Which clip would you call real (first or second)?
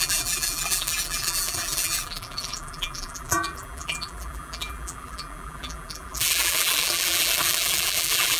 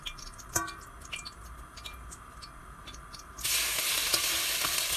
second